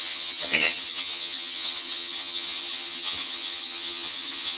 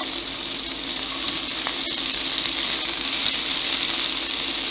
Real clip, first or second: second